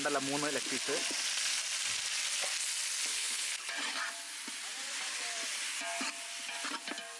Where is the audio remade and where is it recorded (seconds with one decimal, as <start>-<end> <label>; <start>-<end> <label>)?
0.0-3.1 recorded; 3.1-3.7 remade; 3.7-7.2 recorded